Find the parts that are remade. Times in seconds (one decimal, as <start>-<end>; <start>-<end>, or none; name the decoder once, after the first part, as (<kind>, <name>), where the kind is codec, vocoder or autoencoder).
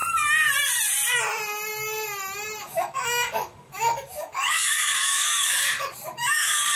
2.6-6.8 (codec, DAC)